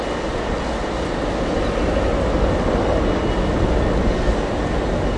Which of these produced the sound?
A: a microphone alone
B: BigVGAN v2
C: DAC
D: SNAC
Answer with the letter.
A